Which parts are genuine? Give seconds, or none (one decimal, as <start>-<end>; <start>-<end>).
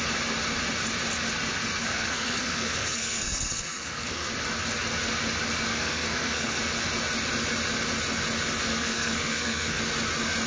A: 0.0-1.8; 4.3-5.7; 6.6-8.7; 9.8-10.5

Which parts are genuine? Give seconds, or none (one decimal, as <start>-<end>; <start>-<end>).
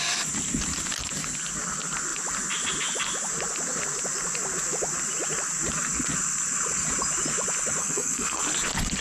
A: 0.0-7.8; 8.4-9.0